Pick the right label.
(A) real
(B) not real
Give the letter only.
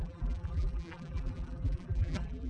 B